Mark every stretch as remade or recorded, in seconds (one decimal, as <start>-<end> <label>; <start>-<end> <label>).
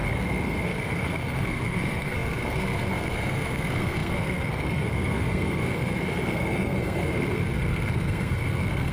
0.0-8.9 remade